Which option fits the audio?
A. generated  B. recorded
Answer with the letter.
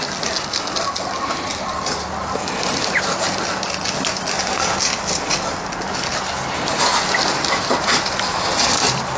B